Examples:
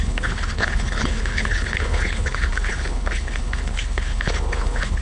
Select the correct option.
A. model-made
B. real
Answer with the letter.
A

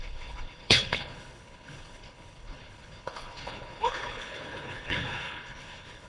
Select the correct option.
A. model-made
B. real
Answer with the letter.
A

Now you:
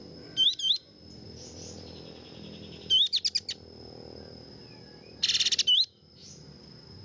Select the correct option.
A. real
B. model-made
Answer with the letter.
A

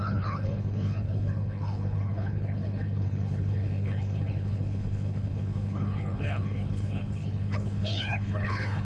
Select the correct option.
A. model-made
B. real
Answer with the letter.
A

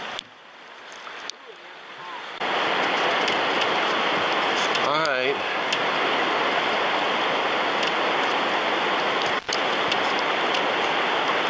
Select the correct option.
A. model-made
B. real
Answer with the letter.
B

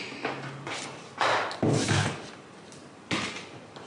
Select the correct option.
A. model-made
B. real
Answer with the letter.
B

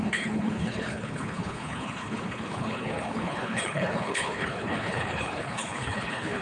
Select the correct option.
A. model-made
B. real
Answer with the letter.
A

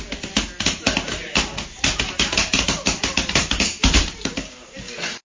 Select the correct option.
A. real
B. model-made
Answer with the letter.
A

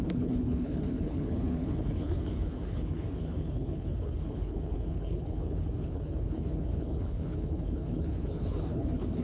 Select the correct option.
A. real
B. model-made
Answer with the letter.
B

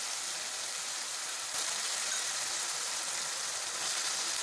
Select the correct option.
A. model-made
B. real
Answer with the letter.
B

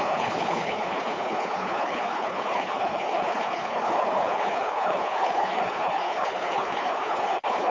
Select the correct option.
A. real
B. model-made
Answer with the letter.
B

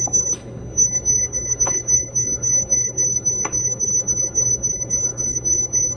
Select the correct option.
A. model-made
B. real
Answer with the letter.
A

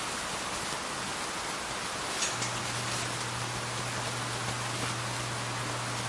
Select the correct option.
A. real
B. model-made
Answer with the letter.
A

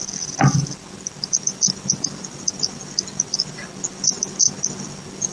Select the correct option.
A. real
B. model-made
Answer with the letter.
A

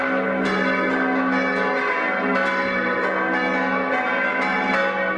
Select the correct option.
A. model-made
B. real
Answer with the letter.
B